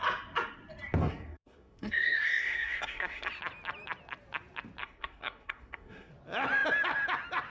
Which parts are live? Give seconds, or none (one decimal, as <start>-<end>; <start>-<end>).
0.0-1.0; 3.3-4.8; 6.1-7.5